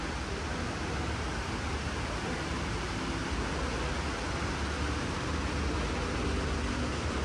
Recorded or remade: recorded